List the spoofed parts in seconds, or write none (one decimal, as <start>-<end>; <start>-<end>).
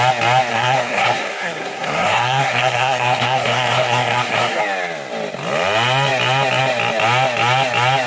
0.5-4.6